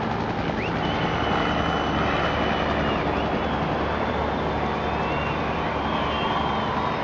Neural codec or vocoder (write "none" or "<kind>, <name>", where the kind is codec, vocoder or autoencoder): none